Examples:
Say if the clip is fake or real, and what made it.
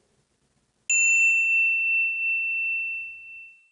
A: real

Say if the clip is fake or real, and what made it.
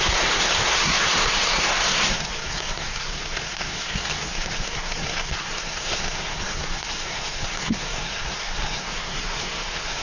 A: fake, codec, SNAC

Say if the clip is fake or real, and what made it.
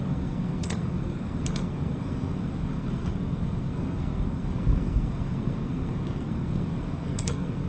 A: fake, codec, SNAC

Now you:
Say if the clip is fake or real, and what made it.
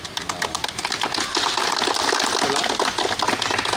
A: real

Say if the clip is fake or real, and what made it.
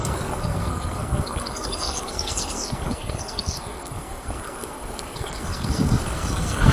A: fake, codec, SNAC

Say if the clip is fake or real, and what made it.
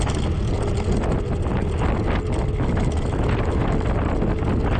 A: real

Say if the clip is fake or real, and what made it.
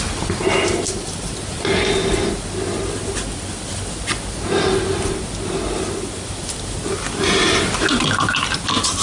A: real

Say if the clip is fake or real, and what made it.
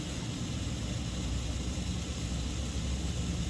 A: real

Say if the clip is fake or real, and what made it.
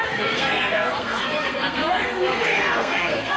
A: fake, codec, SNAC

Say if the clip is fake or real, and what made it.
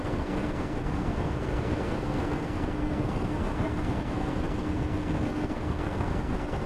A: fake, codec, SNAC